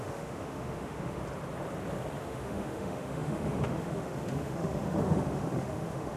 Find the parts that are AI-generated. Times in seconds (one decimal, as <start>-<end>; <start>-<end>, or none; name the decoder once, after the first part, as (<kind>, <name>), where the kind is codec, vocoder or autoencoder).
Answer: 0.0-1.2 (autoencoder, DAC-VAE); 2.2-6.2